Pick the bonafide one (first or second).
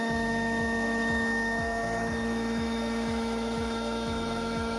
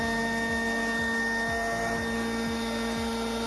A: second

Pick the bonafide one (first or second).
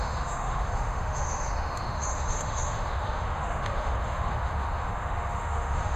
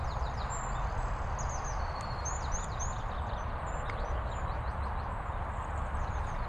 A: second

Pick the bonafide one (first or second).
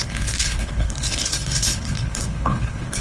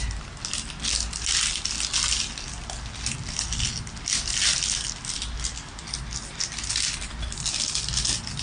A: second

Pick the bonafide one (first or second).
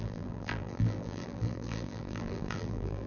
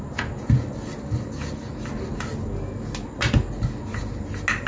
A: second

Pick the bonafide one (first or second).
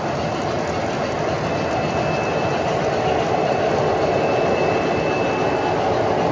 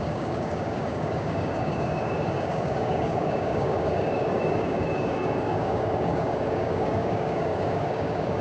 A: first